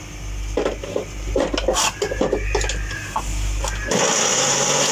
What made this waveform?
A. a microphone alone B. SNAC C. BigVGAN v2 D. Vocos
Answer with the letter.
A